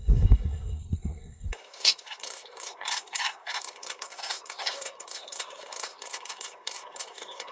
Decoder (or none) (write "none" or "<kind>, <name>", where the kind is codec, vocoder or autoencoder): codec, SNAC